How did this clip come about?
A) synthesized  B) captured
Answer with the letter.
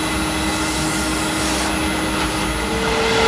B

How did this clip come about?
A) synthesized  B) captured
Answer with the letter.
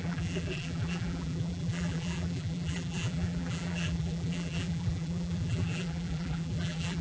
A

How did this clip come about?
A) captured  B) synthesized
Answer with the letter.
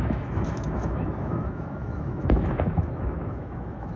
B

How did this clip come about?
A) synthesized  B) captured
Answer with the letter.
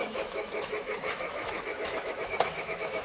A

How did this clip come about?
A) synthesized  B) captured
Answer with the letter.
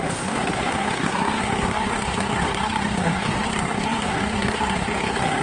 A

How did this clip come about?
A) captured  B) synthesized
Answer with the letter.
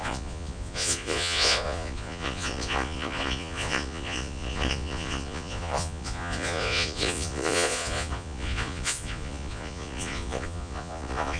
B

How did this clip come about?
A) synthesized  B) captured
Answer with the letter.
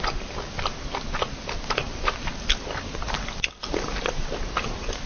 B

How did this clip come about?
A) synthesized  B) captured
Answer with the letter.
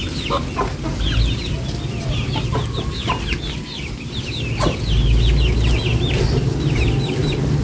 B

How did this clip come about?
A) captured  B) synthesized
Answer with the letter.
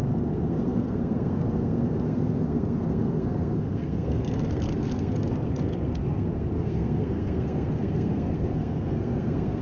B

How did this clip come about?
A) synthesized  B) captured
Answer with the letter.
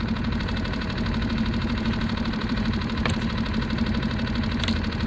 A